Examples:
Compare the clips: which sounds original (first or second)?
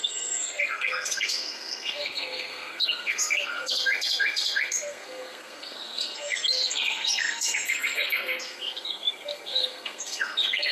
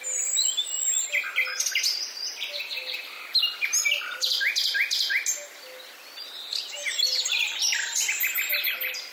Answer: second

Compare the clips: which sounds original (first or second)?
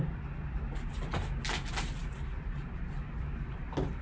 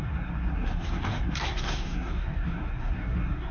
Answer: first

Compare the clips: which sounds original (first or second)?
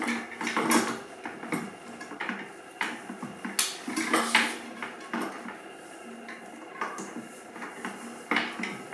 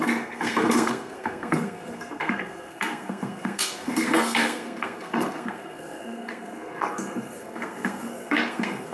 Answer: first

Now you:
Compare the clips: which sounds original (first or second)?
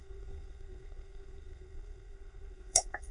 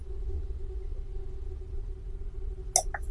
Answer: second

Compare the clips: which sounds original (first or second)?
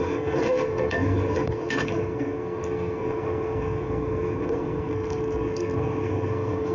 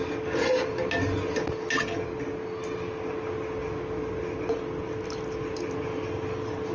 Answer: second